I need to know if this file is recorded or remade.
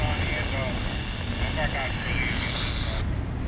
recorded